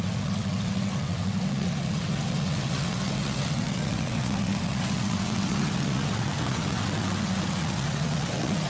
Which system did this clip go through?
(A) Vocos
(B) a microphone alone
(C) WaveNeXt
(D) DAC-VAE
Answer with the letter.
C